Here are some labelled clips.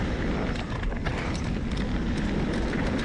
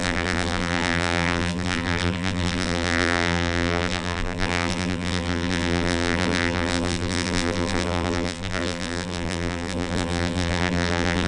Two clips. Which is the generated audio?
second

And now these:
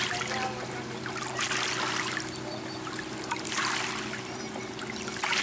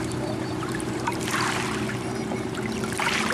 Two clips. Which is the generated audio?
second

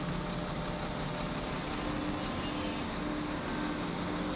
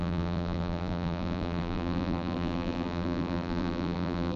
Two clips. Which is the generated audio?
second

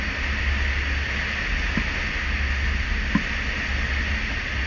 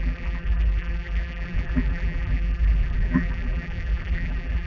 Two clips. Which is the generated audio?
second